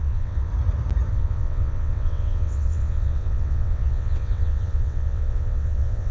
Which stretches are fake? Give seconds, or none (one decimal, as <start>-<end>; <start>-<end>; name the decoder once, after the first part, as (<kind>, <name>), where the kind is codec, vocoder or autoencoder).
0.0-0.5 (vocoder, WaveNeXt); 1.1-6.1